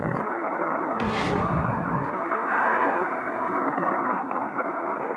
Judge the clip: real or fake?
fake